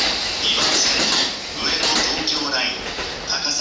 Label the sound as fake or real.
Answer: real